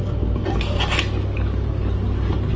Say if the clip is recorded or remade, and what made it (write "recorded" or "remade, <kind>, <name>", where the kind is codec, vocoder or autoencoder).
recorded